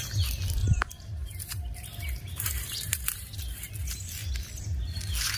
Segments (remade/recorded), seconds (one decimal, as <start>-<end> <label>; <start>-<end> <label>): 0.0-0.6 recorded; 0.6-3.7 remade; 3.7-5.4 recorded